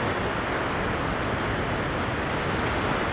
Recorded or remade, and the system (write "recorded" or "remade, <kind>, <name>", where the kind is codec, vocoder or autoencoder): recorded